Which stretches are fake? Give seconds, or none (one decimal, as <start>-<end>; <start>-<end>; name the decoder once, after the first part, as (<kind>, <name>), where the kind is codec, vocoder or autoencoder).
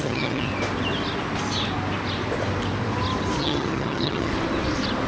0.0-0.5 (vocoder, HiFi-GAN); 3.4-4.3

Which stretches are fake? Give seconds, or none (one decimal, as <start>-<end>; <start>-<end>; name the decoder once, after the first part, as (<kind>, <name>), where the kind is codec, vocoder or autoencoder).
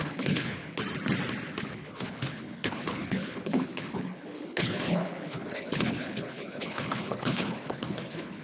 0.0-0.8 (codec, HILCodec); 1.6-8.4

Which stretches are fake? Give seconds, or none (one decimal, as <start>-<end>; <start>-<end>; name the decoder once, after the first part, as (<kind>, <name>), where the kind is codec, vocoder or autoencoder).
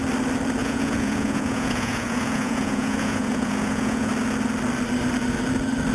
0.6-4.1 (vocoder, Vocos)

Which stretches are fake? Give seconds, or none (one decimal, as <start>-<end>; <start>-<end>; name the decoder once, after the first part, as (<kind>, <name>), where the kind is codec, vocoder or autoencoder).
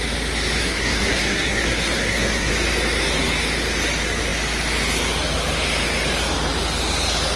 0.6-2.5 (codec, SNAC)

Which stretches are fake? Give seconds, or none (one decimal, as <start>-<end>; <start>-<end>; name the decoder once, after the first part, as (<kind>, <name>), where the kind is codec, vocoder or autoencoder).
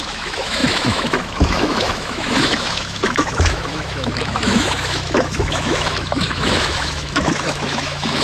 0.0-8.2 (autoencoder, DAC-VAE)